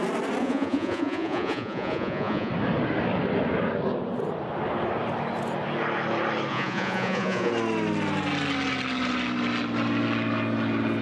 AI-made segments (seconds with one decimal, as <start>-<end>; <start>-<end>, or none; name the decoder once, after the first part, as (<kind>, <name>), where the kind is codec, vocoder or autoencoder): 0.4-2.5 (vocoder, Vocos); 6.5-7.5

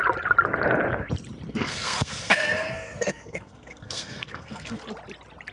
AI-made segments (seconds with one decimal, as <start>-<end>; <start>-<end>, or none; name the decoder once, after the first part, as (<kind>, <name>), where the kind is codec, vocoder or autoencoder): 1.5-4.8 (codec, SNAC)

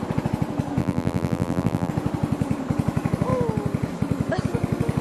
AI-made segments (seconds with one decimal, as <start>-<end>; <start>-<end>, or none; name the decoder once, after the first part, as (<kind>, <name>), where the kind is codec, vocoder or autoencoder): 0.8-1.9 (vocoder, BigVGAN v2)

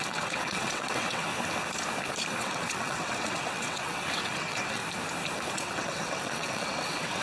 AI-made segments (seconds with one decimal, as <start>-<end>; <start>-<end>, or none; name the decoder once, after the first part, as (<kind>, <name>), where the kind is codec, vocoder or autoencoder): 0.0-1.3 (vocoder, WaveNeXt); 2.4-4.8; 5.5-7.2

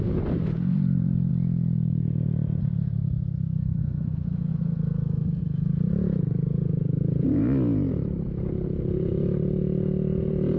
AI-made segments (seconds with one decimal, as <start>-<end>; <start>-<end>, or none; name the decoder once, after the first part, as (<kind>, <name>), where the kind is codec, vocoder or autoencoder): 0.0-1.3 (vocoder, BigVGAN v2); 2.6-4.5; 5.4-9.1; 10.2-10.6

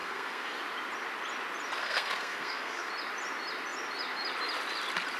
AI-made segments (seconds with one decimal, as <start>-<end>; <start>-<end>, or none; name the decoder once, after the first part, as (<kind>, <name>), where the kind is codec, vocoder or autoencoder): 0.0-0.6 (codec, SNAC); 1.8-2.9

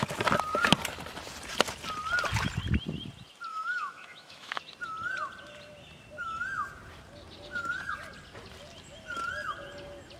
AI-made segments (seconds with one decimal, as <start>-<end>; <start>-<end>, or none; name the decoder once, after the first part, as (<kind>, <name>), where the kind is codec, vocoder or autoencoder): 3.5-4.6 (autoencoder, DAC-VAE)